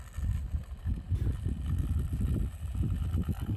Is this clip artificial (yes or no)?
no